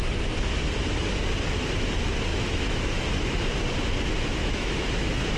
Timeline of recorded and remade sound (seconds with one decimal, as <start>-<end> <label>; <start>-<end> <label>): 0.0-2.3 recorded; 2.3-3.1 remade; 3.1-4.4 recorded; 4.4-5.4 remade